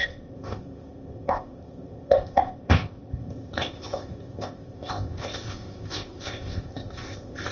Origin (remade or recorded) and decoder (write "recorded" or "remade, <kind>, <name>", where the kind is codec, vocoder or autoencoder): remade, codec, ZipCodec